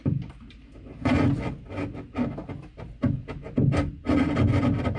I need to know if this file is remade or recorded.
recorded